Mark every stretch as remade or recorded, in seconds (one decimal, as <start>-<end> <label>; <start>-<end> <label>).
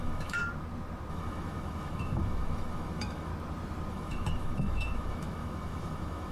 0.0-0.4 remade; 0.4-1.1 recorded; 1.1-3.3 remade; 3.3-3.9 recorded; 3.9-6.3 remade